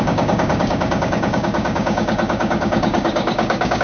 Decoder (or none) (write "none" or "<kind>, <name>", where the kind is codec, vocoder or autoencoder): codec, DAC